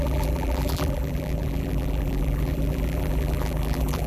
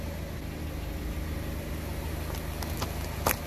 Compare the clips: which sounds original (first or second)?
second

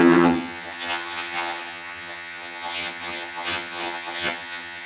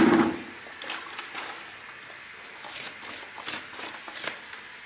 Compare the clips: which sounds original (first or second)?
second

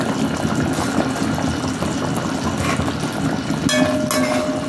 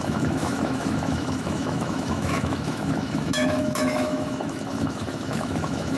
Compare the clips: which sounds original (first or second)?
first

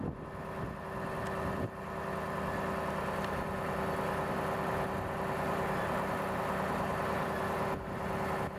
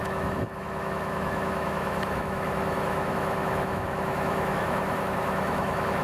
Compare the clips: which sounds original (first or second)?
first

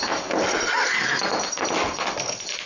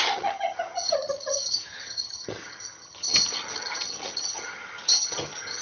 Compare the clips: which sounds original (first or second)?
first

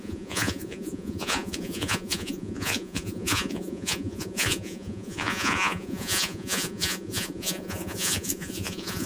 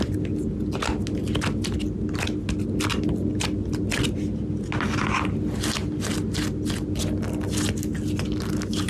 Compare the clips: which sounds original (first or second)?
second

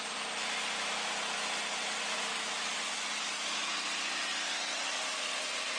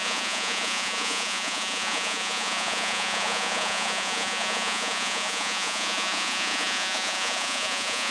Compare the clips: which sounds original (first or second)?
first